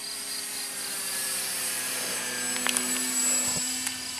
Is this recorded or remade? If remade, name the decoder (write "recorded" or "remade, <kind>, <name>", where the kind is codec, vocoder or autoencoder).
recorded